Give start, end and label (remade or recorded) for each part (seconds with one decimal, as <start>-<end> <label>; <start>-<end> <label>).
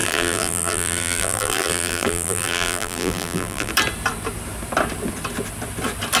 0.0-3.7 remade; 3.7-6.2 recorded